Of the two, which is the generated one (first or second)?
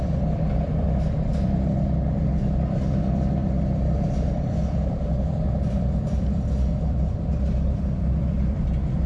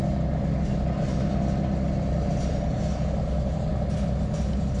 first